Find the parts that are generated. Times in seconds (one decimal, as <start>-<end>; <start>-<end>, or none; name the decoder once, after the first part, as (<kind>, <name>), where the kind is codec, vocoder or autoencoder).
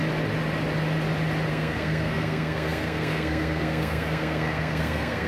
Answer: 1.5-5.3 (codec, SNAC)